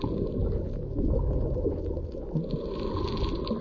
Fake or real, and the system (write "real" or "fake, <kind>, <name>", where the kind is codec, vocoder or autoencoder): real